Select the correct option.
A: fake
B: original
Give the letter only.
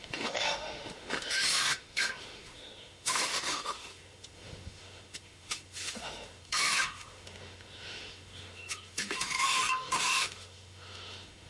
A